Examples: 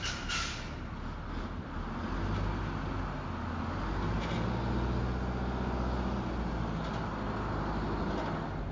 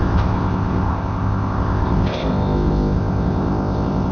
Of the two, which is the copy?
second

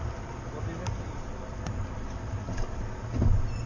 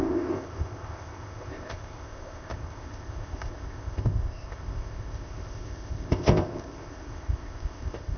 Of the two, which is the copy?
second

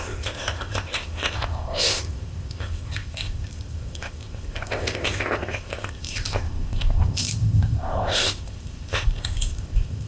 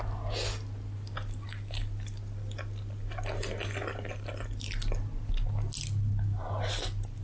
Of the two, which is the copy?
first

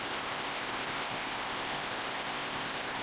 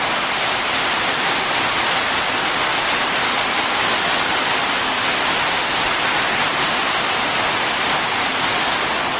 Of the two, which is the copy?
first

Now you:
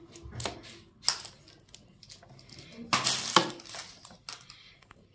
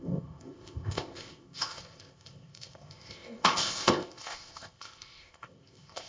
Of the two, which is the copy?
second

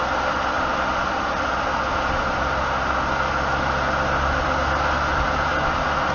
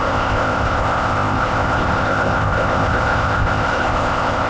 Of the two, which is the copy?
second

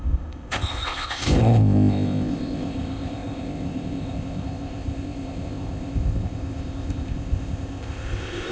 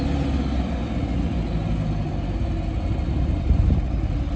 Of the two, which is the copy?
first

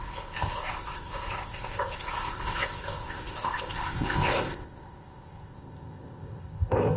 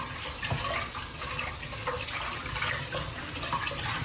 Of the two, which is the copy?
first